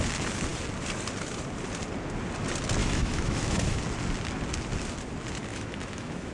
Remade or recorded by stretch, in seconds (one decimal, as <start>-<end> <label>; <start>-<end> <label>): 0.0-2.8 recorded; 2.8-3.8 remade; 3.8-5.5 recorded; 5.5-6.3 remade